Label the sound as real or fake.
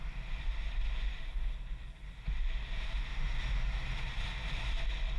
real